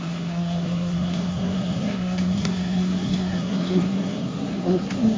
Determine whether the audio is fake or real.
fake